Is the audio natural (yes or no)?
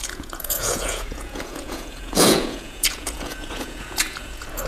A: no